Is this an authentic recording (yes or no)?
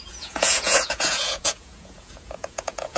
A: no